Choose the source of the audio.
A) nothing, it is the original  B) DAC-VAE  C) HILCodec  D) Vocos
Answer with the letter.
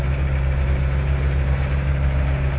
A